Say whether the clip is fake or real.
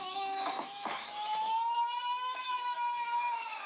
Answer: fake